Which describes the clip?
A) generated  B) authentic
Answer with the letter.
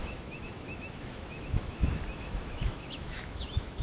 A